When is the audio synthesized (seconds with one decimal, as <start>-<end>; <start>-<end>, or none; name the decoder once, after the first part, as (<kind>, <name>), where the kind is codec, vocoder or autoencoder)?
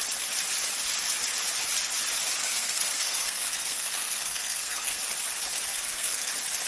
2.4-5.0 (codec, SNAC); 5.7-6.3